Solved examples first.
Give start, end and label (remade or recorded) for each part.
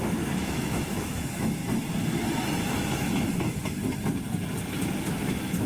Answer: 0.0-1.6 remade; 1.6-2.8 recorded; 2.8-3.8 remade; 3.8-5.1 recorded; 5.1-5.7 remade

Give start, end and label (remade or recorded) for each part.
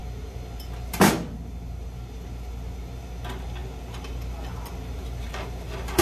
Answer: 0.0-6.0 recorded